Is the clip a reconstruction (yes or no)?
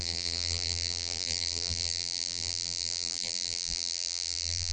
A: yes